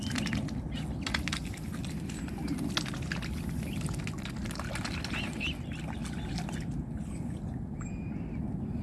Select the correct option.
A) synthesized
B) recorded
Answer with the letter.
B